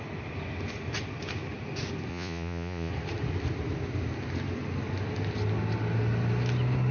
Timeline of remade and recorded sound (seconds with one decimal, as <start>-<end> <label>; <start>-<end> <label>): 0.0-2.1 recorded; 2.1-2.9 remade; 2.9-6.9 recorded